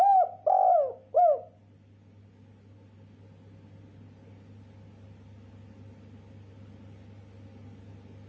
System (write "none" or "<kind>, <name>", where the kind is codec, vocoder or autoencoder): none